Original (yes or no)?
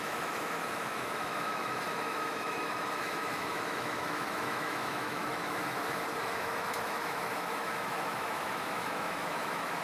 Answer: no